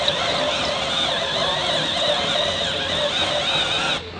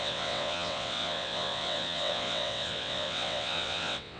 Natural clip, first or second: first